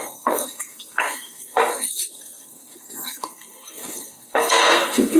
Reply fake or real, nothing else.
fake